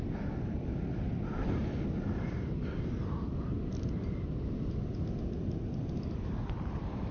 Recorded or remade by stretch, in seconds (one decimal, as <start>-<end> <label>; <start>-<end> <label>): 0.0-1.6 remade; 1.6-2.3 recorded; 2.3-7.1 remade